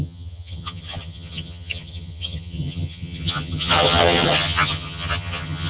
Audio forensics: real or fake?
fake